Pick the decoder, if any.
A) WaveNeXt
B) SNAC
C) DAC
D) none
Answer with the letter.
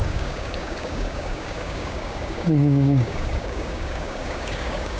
C